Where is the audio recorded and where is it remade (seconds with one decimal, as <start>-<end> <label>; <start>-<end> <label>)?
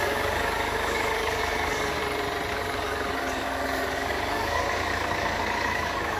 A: 0.0-2.0 remade; 2.0-2.5 recorded; 2.5-6.2 remade